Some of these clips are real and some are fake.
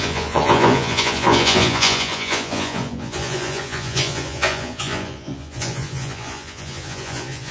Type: fake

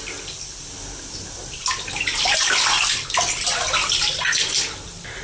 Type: real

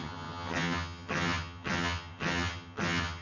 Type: fake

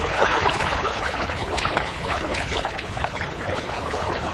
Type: fake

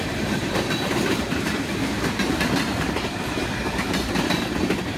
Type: fake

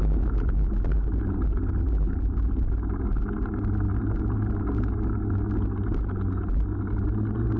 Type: real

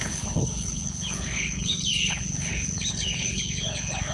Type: fake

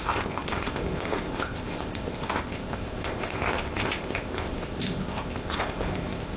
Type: fake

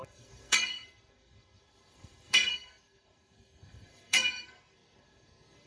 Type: fake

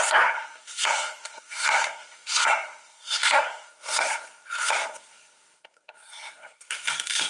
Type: fake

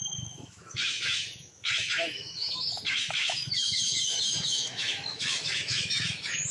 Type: fake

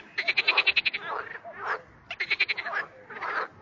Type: real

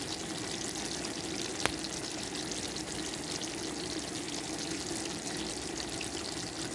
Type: real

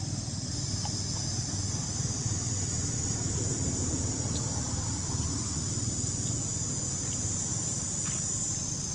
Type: real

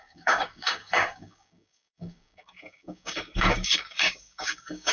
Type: fake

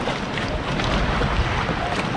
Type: real